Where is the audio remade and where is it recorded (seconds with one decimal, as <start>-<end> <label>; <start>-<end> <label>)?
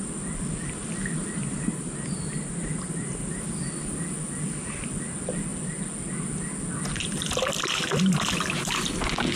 0.0-1.4 recorded; 1.4-3.4 remade; 3.4-9.4 recorded